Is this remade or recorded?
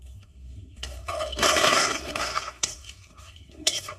remade